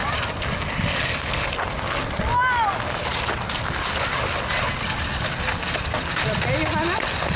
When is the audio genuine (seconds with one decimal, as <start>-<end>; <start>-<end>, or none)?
0.0-7.4